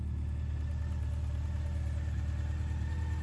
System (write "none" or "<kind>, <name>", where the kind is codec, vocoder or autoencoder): none